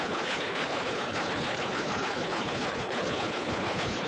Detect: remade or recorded remade